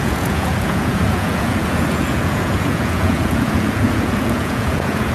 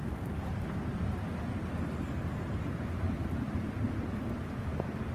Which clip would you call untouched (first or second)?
second